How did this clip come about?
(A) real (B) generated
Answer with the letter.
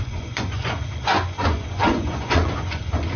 B